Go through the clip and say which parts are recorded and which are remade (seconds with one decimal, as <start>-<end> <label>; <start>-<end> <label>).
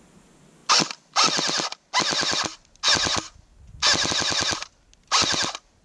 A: 0.0-5.8 recorded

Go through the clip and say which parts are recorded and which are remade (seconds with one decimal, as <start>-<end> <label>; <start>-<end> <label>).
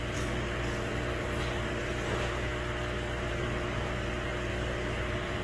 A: 0.0-2.5 remade; 2.5-3.3 recorded; 3.3-5.4 remade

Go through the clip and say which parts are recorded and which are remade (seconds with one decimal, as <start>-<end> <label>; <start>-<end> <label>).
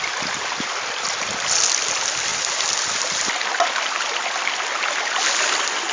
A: 0.0-2.3 recorded; 2.3-5.9 remade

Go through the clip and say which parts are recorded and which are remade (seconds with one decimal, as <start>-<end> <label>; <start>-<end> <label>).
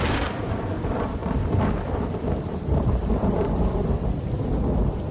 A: 0.0-1.2 recorded; 1.2-4.3 remade; 4.3-5.1 recorded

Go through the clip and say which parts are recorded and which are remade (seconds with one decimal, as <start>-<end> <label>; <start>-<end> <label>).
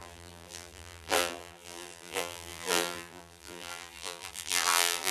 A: 0.0-5.1 remade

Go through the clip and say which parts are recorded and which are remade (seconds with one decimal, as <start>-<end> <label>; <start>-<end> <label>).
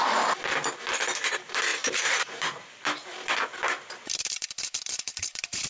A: 0.0-5.7 remade